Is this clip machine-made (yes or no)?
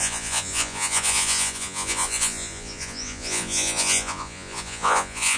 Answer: yes